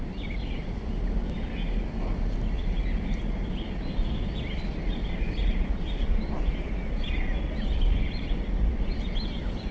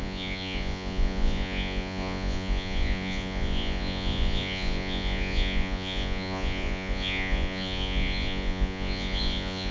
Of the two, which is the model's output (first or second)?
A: second